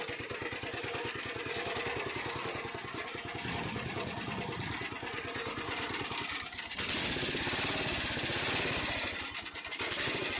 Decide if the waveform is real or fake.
real